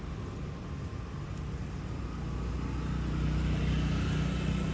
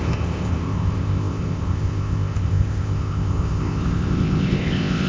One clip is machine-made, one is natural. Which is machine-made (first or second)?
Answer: second